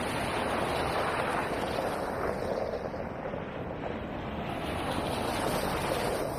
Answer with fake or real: real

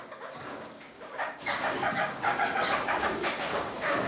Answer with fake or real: fake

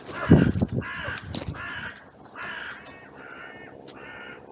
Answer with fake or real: real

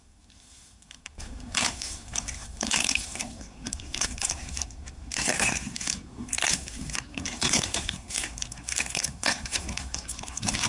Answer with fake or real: fake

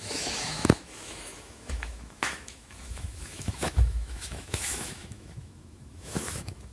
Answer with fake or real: fake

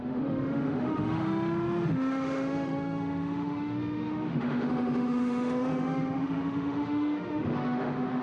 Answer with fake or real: fake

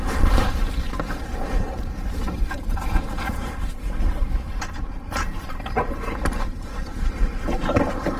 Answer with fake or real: fake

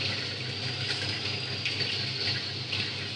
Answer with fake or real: real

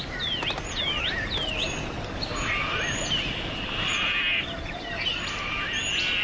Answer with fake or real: real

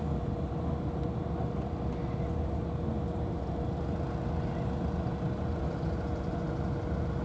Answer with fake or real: real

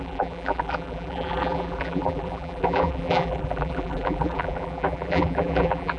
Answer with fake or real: fake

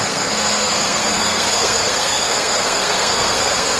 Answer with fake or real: fake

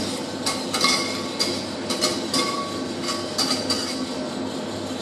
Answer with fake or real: real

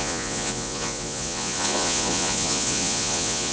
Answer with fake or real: fake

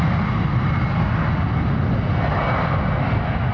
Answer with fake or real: real